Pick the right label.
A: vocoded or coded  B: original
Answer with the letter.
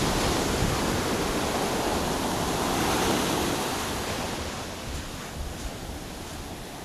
B